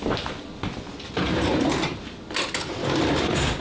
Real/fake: real